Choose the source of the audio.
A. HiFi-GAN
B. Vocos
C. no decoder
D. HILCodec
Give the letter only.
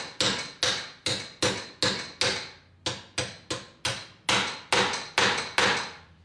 C